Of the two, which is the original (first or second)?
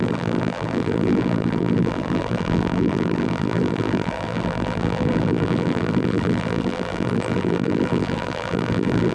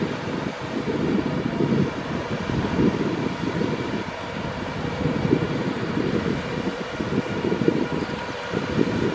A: second